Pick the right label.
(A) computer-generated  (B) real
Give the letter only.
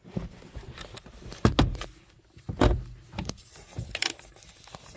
B